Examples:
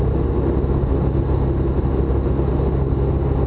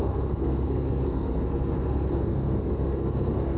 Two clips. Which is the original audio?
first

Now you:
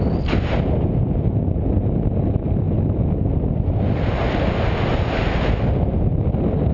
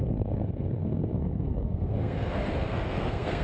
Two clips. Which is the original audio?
first